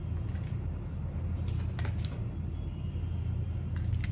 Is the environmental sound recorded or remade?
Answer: recorded